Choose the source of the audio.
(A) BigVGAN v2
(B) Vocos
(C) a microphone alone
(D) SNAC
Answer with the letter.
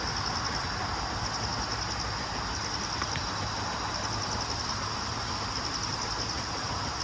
C